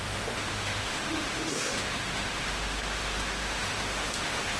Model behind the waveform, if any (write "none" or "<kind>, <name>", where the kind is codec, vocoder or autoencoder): autoencoder, DAC-VAE